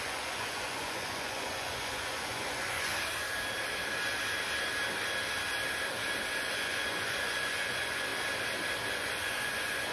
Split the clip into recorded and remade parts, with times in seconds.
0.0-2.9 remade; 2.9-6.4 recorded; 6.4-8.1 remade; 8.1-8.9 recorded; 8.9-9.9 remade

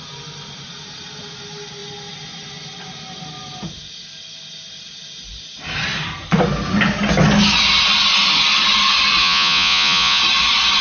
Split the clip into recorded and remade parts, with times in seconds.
0.0-9.2 recorded; 9.2-10.2 remade; 10.2-10.8 recorded

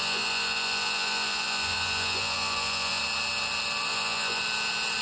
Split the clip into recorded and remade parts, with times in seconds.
0.0-3.0 remade; 3.0-3.9 recorded; 3.9-4.4 remade; 4.4-5.0 recorded